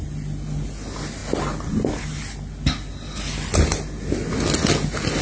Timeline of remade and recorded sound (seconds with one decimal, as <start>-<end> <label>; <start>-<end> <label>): 0.0-5.2 recorded